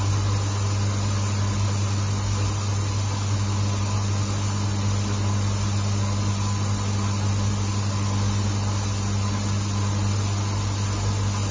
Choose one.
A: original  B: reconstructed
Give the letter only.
A